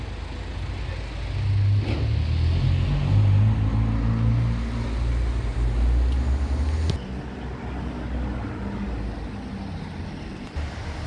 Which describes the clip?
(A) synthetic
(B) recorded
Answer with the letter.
B